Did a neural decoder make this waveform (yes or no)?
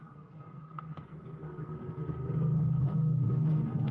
yes